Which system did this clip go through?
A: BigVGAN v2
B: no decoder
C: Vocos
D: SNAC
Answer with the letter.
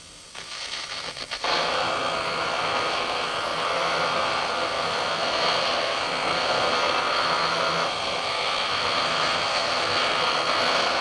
D